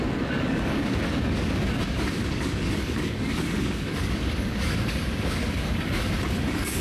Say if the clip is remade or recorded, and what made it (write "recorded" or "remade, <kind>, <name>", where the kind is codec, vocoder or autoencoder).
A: remade, codec, DAC